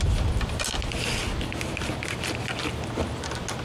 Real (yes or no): yes